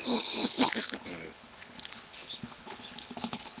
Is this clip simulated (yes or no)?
yes